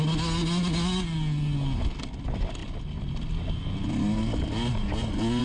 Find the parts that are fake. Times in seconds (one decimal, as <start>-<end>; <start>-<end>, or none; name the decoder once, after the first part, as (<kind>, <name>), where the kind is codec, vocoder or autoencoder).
none